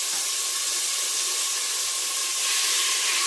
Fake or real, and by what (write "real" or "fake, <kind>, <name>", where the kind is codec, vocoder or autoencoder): fake, vocoder, BigVGAN v2